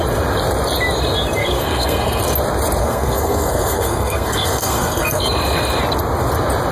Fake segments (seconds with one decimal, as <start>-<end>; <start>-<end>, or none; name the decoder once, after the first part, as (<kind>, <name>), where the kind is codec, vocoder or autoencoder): 1.4-2.2 (codec, SNAC); 2.8-5.2